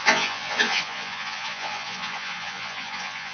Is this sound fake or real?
fake